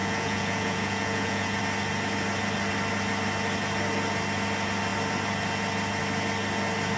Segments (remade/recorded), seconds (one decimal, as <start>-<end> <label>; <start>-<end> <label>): 0.0-1.6 remade; 1.6-7.0 recorded